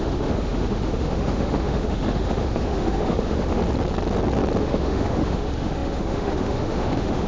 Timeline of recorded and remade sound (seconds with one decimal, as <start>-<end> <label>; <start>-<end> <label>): 0.0-3.6 remade; 3.6-4.6 recorded; 4.6-7.3 remade